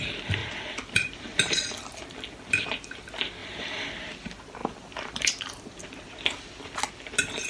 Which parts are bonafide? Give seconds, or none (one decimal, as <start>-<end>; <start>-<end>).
0.0-0.4; 1.7-3.4; 3.9-4.6; 6.9-7.5